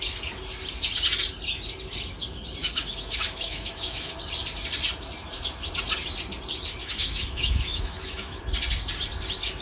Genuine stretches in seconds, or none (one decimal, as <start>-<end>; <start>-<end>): 0.0-2.6; 4.1-6.8; 8.4-9.6